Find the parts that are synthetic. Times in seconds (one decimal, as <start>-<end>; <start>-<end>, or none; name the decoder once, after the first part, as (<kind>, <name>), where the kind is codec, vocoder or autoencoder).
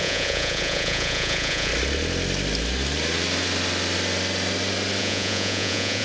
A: 0.0-1.7 (vocoder, Vocos); 5.0-6.0